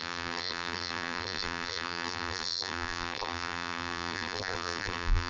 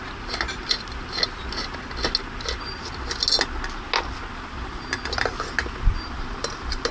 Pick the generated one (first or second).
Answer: first